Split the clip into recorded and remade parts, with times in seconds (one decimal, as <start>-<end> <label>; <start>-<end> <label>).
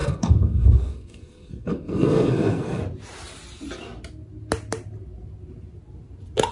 0.0-2.8 remade; 2.8-6.5 recorded